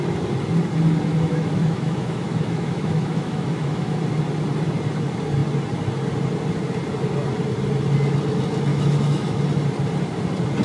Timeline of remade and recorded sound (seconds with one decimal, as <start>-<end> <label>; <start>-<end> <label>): 0.0-1.1 recorded; 1.1-4.0 remade; 4.0-8.7 recorded; 8.7-9.4 remade; 9.4-10.6 recorded

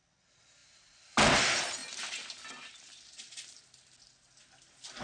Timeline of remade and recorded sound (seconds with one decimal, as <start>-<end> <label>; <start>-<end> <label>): 0.0-5.0 recorded

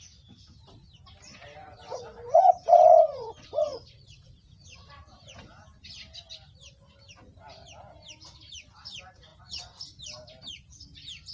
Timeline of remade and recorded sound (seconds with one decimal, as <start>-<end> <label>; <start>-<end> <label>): 0.0-1.6 recorded; 1.6-4.9 remade; 4.9-9.3 recorded; 9.3-10.0 remade; 10.0-11.3 recorded

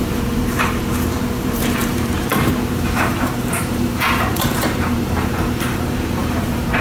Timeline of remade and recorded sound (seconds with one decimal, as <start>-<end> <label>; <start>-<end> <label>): 0.0-6.8 remade

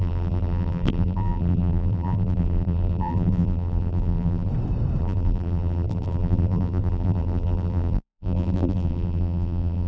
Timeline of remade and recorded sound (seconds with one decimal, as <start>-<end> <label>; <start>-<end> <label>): 0.0-4.5 remade; 4.5-5.0 recorded; 5.0-9.9 remade

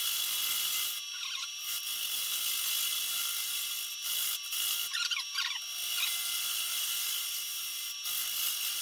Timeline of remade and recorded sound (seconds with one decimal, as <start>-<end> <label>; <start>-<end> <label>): 0.0-8.8 recorded

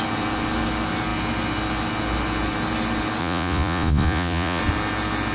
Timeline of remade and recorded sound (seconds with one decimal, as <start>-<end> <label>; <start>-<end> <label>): 0.0-3.2 recorded; 3.2-4.6 remade; 4.6-5.3 recorded

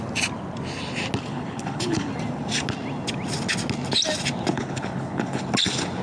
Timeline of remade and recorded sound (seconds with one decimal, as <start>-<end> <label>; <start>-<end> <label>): 0.0-1.3 recorded; 1.3-2.1 remade; 2.1-4.5 recorded; 4.5-5.4 remade; 5.4-6.0 recorded